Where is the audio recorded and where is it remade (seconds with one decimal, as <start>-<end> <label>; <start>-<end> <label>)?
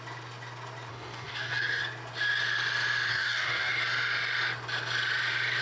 0.0-0.9 recorded; 0.9-1.8 remade; 1.8-3.1 recorded; 3.1-3.7 remade; 3.7-5.6 recorded